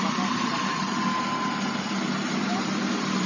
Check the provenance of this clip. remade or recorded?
recorded